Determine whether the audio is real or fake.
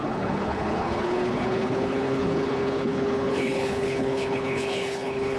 fake